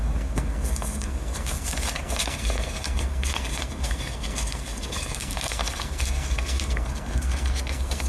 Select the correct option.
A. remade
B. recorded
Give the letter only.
A